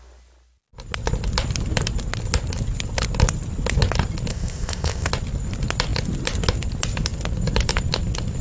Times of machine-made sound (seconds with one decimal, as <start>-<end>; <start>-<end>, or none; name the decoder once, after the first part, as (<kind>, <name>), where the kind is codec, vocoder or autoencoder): 4.3-5.1 (codec, ZipCodec)